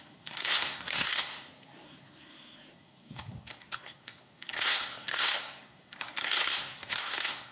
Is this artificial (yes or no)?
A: yes